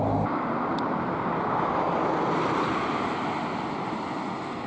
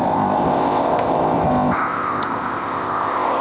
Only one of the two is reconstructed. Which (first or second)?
second